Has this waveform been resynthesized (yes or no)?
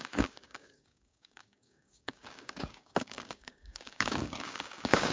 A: yes